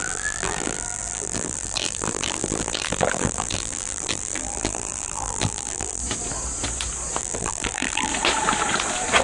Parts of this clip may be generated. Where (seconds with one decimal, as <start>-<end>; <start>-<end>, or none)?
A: 0.0-6.0; 7.2-8.1